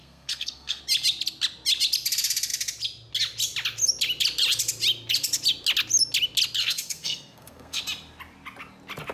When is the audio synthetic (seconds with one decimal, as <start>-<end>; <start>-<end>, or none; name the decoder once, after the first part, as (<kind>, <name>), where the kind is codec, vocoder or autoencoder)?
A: 0.0-0.8 (codec, SNAC); 6.6-7.8